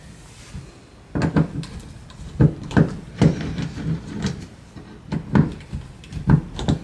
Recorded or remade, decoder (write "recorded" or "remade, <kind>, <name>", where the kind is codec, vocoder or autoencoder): recorded